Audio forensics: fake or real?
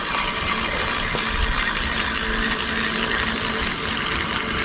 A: real